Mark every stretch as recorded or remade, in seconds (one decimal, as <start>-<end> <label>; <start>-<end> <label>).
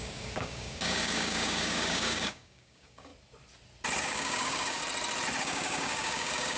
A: 0.0-3.1 remade; 3.1-4.0 recorded; 4.0-4.8 remade; 4.8-5.4 recorded; 5.4-6.6 remade